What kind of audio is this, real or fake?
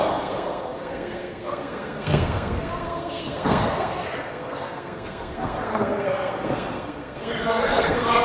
fake